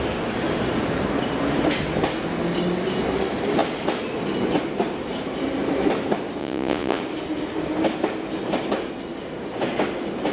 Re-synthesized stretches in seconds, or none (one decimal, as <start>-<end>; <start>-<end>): 6.4-7.0